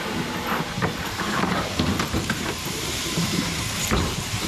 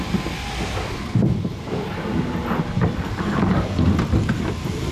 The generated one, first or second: first